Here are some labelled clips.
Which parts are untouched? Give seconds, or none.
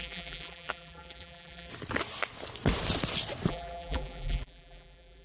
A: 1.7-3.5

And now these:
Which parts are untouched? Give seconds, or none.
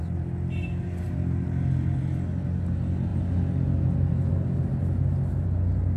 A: 0.0-6.0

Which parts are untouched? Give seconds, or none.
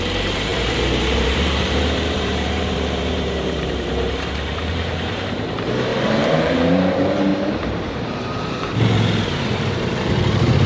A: none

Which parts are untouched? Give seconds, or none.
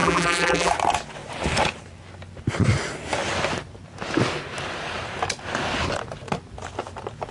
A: 0.7-7.3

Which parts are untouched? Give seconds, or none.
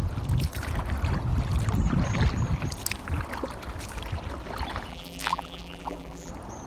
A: 0.0-4.9; 6.3-6.7